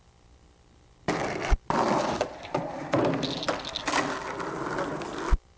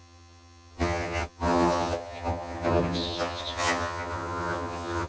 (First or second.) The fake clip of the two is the second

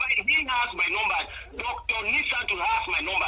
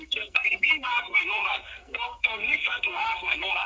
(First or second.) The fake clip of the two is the second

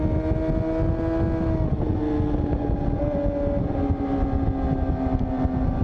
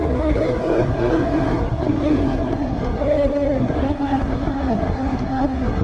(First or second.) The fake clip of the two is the second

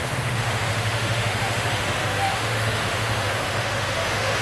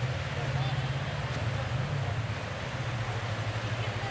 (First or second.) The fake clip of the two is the first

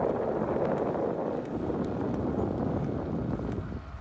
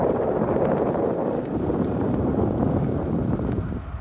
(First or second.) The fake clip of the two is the second